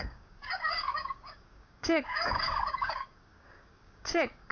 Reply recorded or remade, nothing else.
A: remade